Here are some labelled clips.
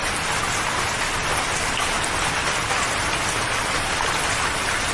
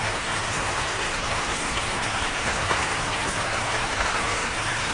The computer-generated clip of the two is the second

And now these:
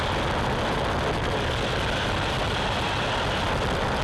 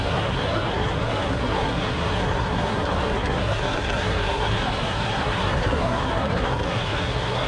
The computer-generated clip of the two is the second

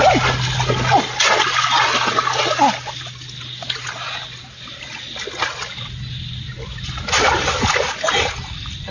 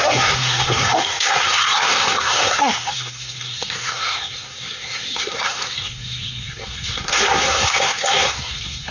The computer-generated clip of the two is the second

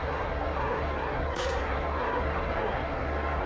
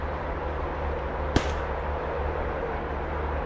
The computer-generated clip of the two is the first